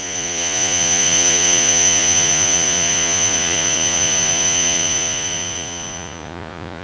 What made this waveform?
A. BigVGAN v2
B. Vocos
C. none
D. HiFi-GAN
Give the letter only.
B